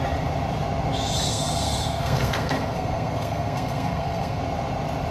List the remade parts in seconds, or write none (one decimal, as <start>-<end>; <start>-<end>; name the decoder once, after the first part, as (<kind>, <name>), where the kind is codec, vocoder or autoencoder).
1.3-4.4 (codec, SNAC)